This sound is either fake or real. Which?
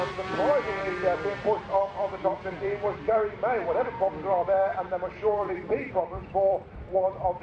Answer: fake